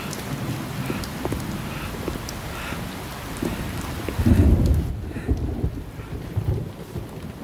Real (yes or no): yes